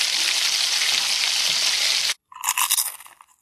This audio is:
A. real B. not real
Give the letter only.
A